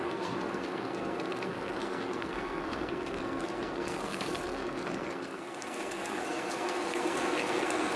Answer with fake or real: fake